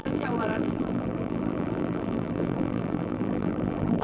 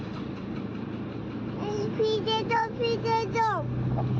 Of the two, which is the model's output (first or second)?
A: first